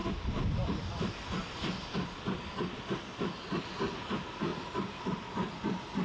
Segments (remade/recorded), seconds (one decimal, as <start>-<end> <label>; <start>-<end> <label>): 0.0-6.0 recorded